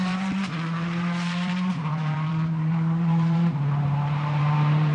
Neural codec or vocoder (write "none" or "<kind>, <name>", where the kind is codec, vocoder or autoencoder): vocoder, BigVGAN v2